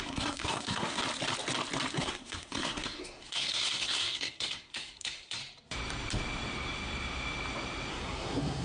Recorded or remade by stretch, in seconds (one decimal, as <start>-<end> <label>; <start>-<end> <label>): 0.0-1.0 remade; 1.0-1.9 recorded; 1.9-5.4 remade; 5.4-7.9 recorded; 7.9-8.6 remade